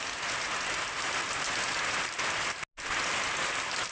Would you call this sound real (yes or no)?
yes